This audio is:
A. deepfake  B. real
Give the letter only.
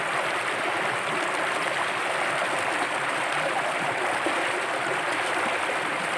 B